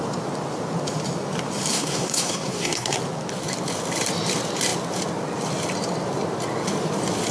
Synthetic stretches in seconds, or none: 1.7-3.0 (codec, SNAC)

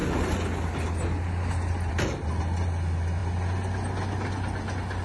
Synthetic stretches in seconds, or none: none

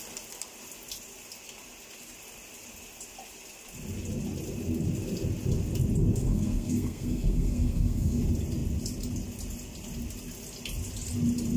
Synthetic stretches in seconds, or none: 6.2-8.2 (codec, SNAC)

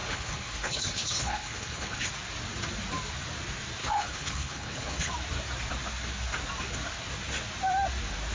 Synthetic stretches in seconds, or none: 0.0-2.1 (codec, HILCodec); 3.8-5.1

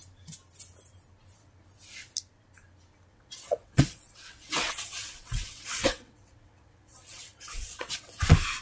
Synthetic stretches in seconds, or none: 3.1-8.1 (vocoder, WaveNeXt)

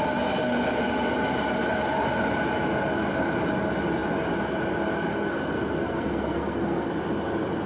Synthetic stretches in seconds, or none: 5.1-6.9 (codec, SNAC)